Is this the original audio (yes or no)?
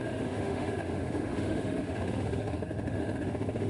no